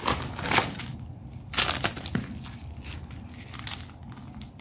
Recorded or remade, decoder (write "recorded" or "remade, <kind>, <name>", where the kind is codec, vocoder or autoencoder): recorded